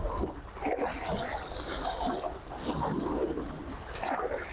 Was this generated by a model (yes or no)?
no